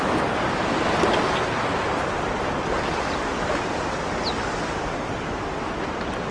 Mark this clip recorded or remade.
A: recorded